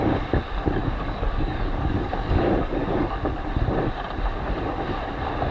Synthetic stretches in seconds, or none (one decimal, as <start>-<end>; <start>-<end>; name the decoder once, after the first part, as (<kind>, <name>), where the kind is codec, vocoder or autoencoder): 0.8-3.1 (codec, DAC)